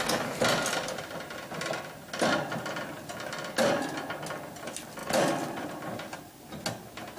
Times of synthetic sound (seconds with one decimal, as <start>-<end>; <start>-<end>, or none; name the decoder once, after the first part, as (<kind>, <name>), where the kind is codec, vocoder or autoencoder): none